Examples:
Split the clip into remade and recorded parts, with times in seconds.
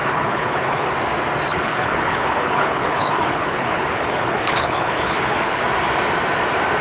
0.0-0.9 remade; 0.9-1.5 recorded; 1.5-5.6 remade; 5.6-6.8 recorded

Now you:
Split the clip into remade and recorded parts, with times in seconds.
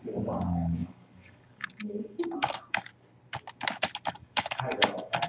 0.0-2.9 remade; 2.9-4.1 recorded; 4.1-5.3 remade